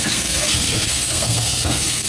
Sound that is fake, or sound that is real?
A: fake